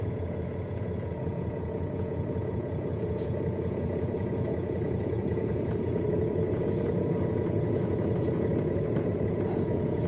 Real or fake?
fake